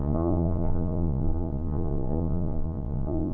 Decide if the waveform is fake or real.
fake